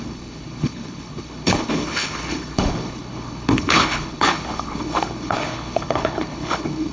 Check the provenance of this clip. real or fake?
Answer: fake